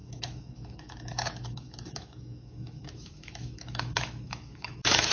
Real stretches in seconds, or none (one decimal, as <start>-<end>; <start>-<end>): none